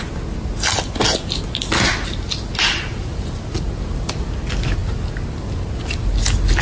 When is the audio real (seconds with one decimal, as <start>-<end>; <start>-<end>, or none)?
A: 0.0-6.6